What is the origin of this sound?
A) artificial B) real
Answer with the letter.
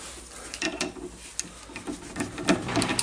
B